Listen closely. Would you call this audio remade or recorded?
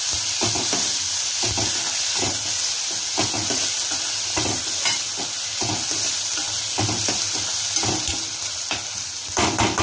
recorded